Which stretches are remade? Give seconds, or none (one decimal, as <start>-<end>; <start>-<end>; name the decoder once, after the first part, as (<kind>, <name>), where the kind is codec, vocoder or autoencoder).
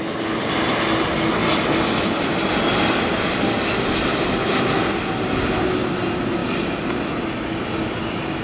none